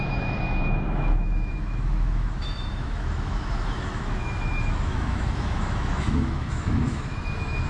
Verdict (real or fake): fake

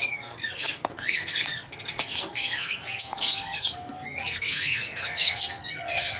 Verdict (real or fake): fake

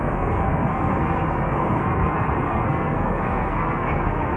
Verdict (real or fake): fake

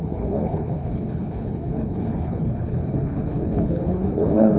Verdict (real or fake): fake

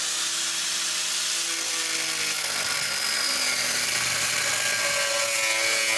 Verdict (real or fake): real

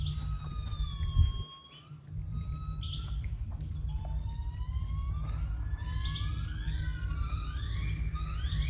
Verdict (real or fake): real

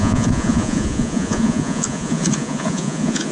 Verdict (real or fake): fake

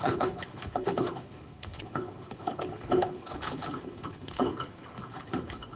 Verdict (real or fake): fake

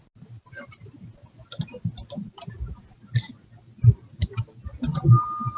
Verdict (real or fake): real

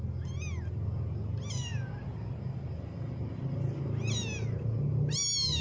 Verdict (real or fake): real